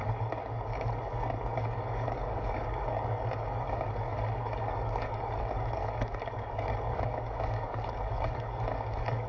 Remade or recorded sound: remade